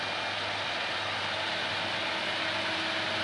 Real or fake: real